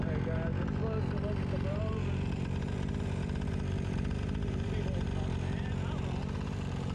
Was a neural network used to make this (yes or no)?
yes